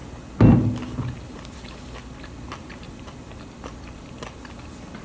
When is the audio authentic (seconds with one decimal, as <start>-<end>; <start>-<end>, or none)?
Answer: 0.0-5.0